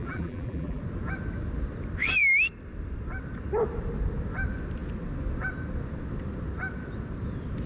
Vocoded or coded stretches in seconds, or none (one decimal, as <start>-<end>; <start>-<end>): 0.0-0.8